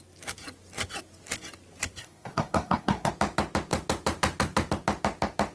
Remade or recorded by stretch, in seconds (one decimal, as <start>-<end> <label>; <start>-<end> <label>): 0.0-2.0 recorded; 2.0-3.1 remade; 3.1-5.5 recorded